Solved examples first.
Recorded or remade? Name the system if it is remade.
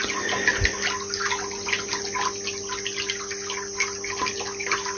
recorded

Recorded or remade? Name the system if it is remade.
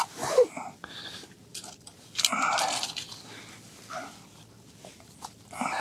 recorded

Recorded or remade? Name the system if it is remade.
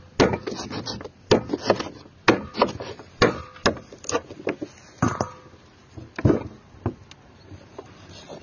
recorded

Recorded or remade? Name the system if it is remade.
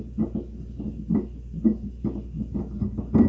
recorded